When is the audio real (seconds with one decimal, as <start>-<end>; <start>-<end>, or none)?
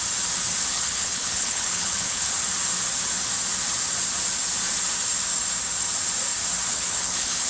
0.0-0.7; 2.3-6.7